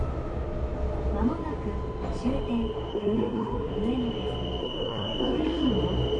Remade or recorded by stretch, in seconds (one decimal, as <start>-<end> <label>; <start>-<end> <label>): 0.0-2.9 recorded; 2.9-3.7 remade; 3.7-4.6 recorded; 4.6-5.7 remade; 5.7-6.2 recorded

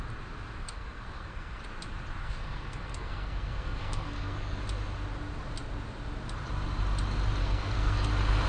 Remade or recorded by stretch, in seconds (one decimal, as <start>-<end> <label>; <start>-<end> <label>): 0.0-0.6 recorded; 0.6-1.6 remade; 1.6-2.2 recorded; 2.2-4.6 remade; 4.6-7.4 recorded; 7.4-8.1 remade; 8.1-8.5 recorded

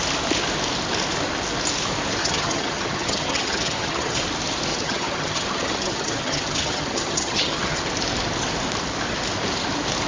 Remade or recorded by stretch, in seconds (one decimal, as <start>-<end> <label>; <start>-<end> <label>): 0.0-2.2 recorded; 2.2-4.2 remade; 4.2-4.7 recorded; 4.7-7.8 remade; 7.8-10.1 recorded

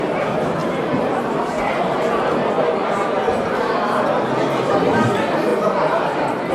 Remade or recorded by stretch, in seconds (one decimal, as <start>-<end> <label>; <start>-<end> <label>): 0.0-0.6 recorded; 0.6-2.1 remade; 2.1-2.8 recorded; 2.8-3.7 remade; 3.7-6.5 recorded

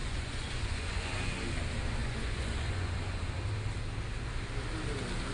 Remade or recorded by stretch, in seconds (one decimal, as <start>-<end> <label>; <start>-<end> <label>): 0.0-1.1 remade; 1.1-2.0 recorded; 2.0-3.2 remade; 3.2-5.3 recorded

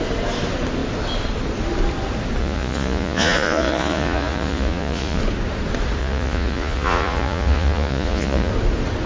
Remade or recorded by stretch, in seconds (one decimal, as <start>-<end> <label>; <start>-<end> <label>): 0.0-2.4 recorded; 2.4-5.2 remade; 5.2-6.0 recorded; 6.0-8.5 remade; 8.5-9.1 recorded

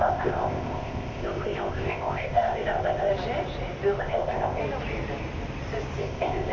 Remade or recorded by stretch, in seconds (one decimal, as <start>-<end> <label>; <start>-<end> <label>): 0.0-3.1 remade; 3.1-4.0 recorded; 4.0-4.6 remade; 4.6-6.0 recorded; 6.0-6.5 remade

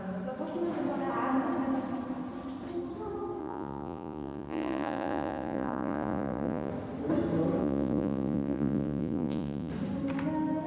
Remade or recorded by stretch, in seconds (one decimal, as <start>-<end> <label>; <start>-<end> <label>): 0.0-3.4 recorded; 3.4-6.7 remade; 6.7-7.6 recorded; 7.6-9.7 remade; 9.7-10.7 recorded